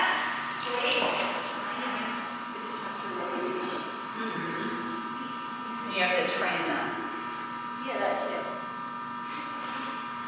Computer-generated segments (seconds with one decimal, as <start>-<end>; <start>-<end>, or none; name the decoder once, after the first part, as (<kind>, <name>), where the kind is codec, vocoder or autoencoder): 2.5-4.6 (vocoder, WaveNeXt)